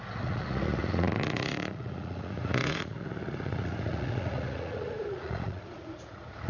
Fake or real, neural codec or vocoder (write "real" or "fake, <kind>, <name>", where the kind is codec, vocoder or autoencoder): fake, vocoder, Vocos